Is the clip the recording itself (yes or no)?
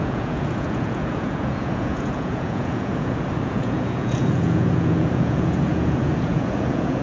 no